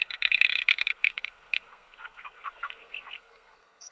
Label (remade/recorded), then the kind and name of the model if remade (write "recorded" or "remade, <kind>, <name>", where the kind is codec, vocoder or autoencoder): remade, codec, SNAC